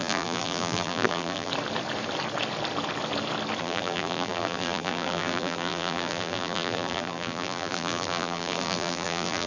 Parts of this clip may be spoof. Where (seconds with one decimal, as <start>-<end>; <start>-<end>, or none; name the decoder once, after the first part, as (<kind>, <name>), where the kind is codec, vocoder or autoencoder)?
0.0-1.5 (vocoder, BigVGAN v2); 3.6-9.5